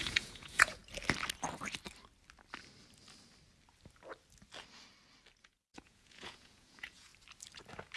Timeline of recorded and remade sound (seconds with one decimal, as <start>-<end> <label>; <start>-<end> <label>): 0.0-0.8 remade; 0.8-5.4 recorded; 5.4-7.1 remade; 7.1-8.0 recorded